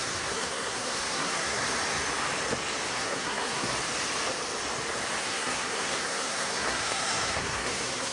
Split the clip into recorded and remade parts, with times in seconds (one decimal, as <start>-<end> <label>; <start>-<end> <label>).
0.0-1.6 remade; 1.6-2.9 recorded; 2.9-3.7 remade; 3.7-5.2 recorded; 5.2-8.1 remade